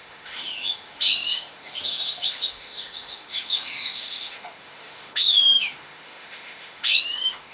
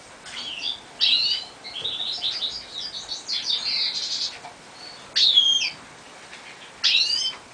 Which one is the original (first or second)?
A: second